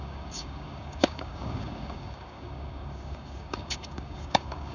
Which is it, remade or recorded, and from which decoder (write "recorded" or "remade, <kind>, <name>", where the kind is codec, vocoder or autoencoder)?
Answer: remade, codec, DAC